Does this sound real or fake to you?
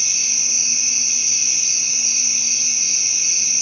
real